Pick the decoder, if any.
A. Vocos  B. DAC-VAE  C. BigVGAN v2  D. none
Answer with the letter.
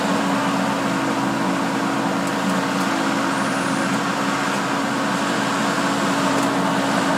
D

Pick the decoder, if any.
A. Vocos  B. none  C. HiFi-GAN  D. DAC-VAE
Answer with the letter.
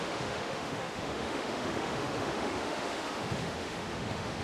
D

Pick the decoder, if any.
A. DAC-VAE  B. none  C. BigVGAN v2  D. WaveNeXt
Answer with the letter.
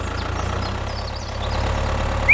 B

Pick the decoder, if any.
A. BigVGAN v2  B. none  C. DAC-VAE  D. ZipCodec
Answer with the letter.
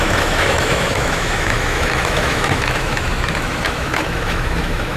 C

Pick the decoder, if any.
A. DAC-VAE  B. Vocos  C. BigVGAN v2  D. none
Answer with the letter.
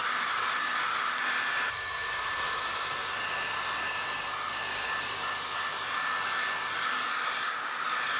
D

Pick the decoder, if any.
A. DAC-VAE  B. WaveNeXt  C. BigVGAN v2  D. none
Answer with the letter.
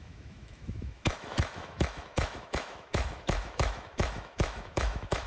A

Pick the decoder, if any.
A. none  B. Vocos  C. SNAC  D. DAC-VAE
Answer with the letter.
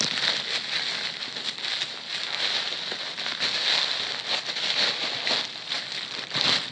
A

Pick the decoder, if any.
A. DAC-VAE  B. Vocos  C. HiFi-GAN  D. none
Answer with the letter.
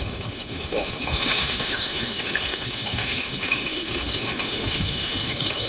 A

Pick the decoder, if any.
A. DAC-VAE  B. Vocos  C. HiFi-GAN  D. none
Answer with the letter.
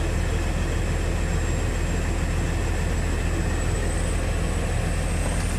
D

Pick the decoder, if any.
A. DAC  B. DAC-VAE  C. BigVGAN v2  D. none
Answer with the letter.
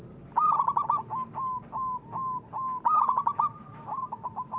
D